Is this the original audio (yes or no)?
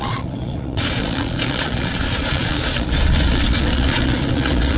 no